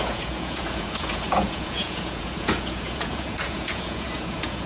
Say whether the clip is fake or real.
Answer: fake